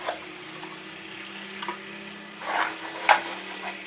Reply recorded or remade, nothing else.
recorded